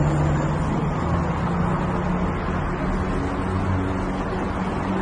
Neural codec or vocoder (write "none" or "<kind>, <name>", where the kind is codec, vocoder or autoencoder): none